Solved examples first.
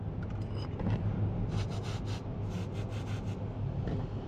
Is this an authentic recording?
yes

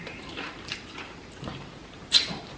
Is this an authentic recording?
no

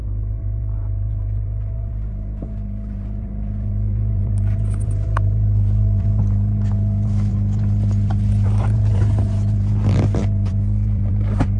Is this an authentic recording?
no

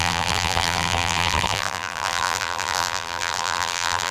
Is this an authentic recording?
no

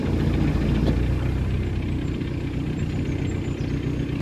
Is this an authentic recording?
yes